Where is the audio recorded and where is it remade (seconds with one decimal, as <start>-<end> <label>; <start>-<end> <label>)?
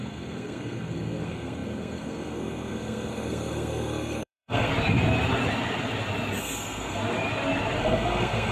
0.0-4.7 remade; 4.7-6.4 recorded; 6.4-7.0 remade; 7.0-7.8 recorded; 7.8-8.5 remade